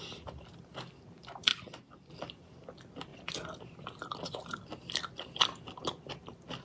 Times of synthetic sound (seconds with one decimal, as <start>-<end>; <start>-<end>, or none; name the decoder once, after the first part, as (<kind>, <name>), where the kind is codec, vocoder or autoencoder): 1.5-2.1 (vocoder, BigVGAN v2); 3.1-5.8